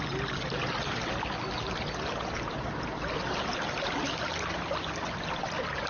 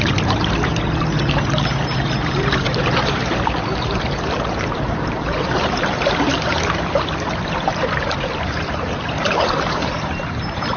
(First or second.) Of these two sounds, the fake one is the second